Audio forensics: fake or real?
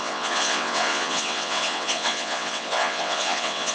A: fake